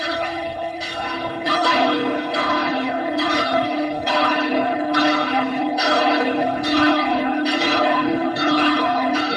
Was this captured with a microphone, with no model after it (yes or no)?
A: no